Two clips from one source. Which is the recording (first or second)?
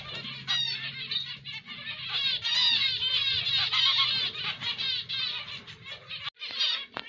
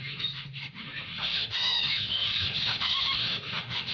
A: first